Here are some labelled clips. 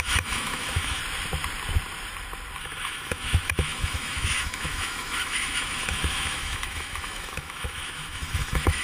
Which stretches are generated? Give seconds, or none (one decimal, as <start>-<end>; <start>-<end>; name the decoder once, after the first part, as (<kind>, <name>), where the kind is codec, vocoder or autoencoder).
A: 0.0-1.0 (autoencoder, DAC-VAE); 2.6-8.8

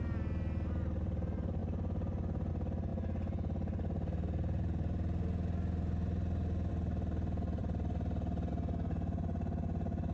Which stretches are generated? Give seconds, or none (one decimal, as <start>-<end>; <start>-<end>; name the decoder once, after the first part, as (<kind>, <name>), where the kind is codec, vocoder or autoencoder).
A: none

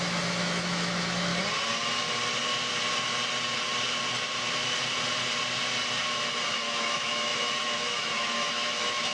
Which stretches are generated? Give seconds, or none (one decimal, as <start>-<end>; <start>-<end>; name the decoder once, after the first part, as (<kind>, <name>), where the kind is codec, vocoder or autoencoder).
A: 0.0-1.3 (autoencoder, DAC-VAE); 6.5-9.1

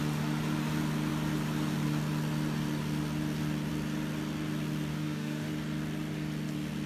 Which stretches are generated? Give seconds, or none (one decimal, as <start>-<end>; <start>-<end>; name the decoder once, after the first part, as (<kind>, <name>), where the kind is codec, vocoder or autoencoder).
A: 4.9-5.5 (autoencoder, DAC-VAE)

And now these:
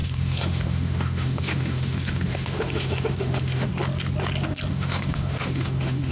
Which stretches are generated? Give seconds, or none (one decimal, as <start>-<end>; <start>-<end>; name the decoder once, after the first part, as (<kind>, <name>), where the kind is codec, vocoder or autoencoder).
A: 0.0-3.7 (autoencoder, DAC-VAE); 4.7-6.1

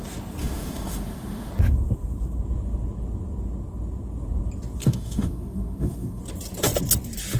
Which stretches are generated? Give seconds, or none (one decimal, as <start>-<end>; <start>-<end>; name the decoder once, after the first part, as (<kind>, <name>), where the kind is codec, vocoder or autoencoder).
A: 0.4-1.5 (autoencoder, DAC-VAE); 4.8-6.2